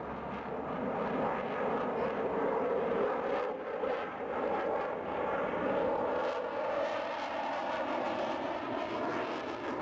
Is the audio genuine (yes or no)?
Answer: yes